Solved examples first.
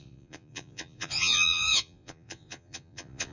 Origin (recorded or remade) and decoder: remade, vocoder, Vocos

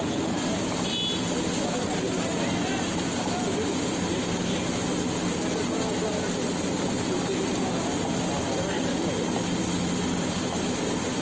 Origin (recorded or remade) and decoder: recorded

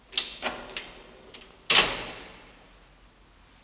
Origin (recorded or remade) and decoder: recorded